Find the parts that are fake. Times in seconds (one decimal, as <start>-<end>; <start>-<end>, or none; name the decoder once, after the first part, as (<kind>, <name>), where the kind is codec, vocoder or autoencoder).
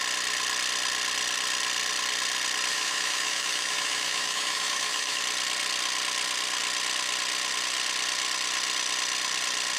2.7-5.2 (autoencoder, DAC-VAE)